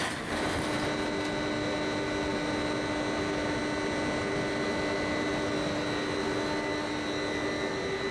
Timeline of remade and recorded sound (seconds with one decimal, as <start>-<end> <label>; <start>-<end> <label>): 0.0-8.1 recorded